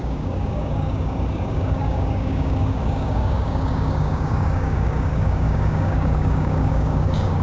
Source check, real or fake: fake